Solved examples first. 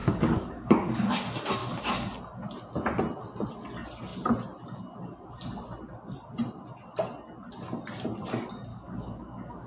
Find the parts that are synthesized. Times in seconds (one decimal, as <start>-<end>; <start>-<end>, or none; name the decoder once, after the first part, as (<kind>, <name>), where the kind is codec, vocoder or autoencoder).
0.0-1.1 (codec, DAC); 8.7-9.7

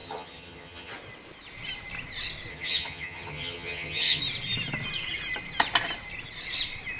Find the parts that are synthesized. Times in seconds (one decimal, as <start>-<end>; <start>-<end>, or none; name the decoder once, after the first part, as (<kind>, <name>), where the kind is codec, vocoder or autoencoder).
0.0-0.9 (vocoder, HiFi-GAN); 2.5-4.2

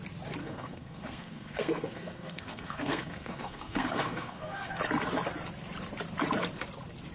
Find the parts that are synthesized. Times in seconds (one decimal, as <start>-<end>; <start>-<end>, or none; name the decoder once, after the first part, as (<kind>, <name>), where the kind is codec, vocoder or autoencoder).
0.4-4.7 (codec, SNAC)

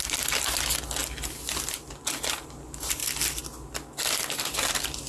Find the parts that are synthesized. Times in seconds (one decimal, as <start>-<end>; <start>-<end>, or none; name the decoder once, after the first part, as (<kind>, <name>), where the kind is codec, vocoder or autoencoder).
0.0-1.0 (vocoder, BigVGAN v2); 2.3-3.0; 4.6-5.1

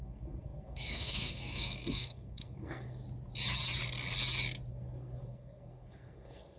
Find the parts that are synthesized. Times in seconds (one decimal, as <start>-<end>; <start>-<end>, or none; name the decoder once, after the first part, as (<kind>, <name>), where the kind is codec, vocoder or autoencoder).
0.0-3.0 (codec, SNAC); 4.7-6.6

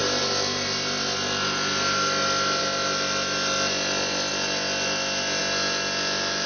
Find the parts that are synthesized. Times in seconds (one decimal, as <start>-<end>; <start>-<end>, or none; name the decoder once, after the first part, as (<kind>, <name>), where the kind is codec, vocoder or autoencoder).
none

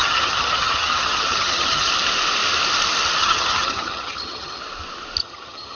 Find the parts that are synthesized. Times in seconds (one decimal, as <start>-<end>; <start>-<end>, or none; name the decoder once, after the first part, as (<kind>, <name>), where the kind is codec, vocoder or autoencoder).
0.0-1.9 (vocoder, HiFi-GAN); 3.2-4.6; 5.2-5.8

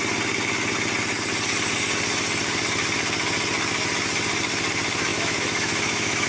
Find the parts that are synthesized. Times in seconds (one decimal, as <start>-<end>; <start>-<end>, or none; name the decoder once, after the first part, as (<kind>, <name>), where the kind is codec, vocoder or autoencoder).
5.1-6.3 (autoencoder, DAC-VAE)